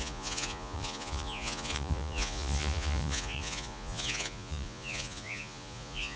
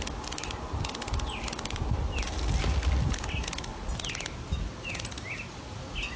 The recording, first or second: second